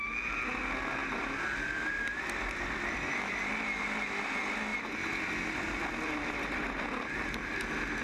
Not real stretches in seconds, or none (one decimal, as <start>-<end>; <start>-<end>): 1.0-3.1